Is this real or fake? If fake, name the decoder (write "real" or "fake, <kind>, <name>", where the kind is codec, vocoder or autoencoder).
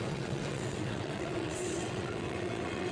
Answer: fake, vocoder, WaveNeXt